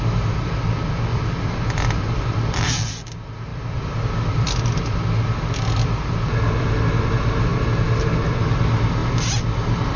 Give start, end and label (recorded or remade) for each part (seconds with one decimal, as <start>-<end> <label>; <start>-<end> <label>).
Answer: 0.0-1.1 recorded; 1.1-2.9 remade; 2.9-3.5 recorded; 3.5-4.6 remade; 4.6-10.0 recorded